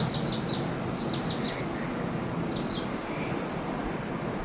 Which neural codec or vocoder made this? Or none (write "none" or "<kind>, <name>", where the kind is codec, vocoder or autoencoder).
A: none